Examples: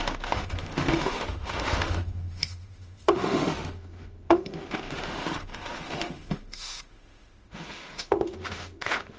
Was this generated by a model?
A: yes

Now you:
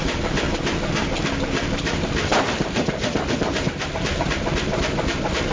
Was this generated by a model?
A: yes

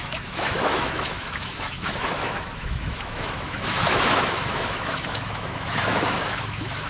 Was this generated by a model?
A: yes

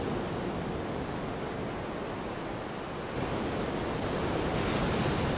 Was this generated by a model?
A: no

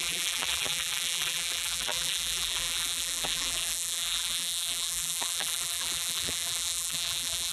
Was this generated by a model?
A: yes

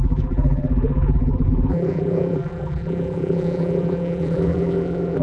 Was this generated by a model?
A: yes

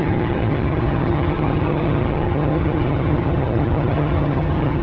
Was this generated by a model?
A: yes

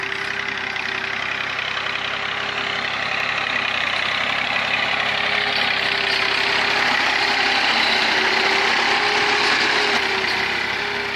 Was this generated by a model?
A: no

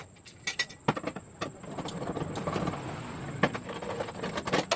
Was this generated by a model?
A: no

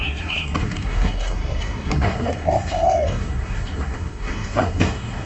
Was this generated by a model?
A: yes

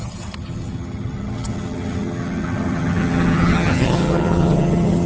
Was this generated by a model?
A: yes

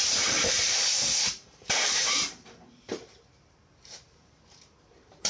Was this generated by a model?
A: yes